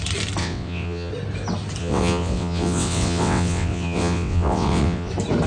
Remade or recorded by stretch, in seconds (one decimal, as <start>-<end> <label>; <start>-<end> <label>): 0.0-0.4 recorded; 0.4-1.1 remade; 1.1-1.8 recorded; 1.8-5.1 remade; 5.1-5.5 recorded